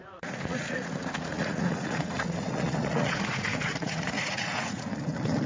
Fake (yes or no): yes